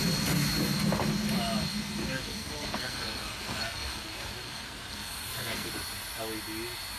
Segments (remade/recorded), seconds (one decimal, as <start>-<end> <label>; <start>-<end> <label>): 0.0-2.0 recorded; 2.0-5.7 remade; 5.7-7.0 recorded

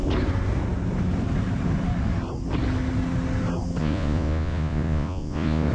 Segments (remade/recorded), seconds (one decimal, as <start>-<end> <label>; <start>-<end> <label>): 0.0-3.8 recorded; 3.8-5.7 remade

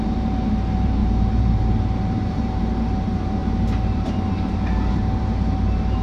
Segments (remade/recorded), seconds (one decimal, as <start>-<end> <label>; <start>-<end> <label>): 0.0-6.0 remade

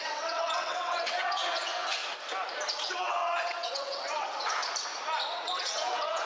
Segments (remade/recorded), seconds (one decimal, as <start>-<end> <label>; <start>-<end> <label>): 0.0-2.0 remade; 2.0-2.8 recorded; 2.8-4.6 remade; 4.6-5.3 recorded; 5.3-6.3 remade

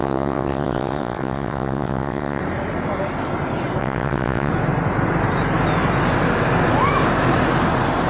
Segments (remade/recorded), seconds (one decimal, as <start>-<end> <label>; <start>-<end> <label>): 0.0-2.4 remade; 2.4-3.8 recorded; 3.8-4.5 remade; 4.5-8.1 recorded

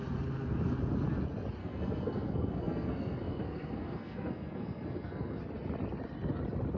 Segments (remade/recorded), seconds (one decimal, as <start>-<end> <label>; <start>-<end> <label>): 0.0-1.6 recorded; 1.6-5.4 remade; 5.4-6.8 recorded

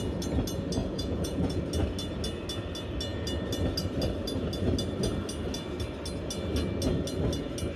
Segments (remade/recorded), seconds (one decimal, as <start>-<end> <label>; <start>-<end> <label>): 0.0-0.8 recorded; 0.8-1.6 remade; 1.6-7.8 recorded